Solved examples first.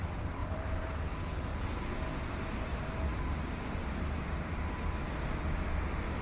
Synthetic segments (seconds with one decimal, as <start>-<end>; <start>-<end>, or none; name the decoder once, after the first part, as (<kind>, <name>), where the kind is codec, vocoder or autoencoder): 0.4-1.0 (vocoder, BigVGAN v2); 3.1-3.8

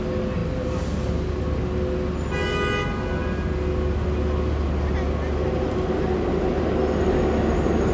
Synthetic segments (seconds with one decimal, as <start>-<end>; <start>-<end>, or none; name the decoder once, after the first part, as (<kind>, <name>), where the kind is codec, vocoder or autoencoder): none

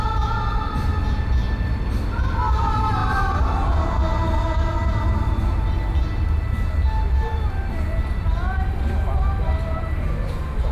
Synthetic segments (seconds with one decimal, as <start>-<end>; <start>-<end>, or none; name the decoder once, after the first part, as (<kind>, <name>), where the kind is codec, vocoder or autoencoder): none